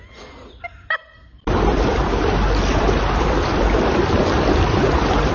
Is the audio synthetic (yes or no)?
yes